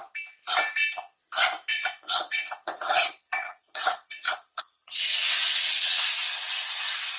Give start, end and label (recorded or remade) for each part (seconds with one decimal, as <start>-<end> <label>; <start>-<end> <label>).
0.0-1.7 recorded; 1.7-6.0 remade; 6.0-7.2 recorded